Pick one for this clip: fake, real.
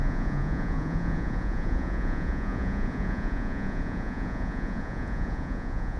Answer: fake